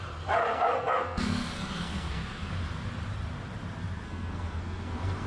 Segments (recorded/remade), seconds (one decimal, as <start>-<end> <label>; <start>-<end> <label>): 0.0-0.4 recorded; 0.4-2.5 remade; 2.5-3.8 recorded; 3.8-5.3 remade